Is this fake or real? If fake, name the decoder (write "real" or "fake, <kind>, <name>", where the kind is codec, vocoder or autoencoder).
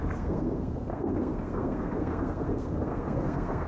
fake, codec, SNAC